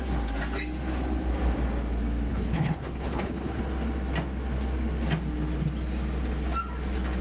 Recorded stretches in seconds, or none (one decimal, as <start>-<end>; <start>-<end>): 0.0-2.3; 3.6-7.2